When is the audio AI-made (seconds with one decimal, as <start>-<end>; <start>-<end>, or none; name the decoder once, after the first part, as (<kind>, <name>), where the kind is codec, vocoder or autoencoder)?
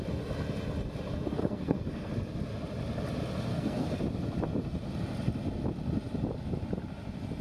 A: 1.3-2.1 (codec, SNAC); 3.5-4.0